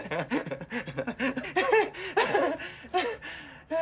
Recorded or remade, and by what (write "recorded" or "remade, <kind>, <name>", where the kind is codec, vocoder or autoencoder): recorded